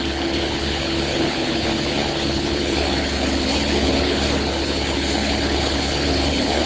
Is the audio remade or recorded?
remade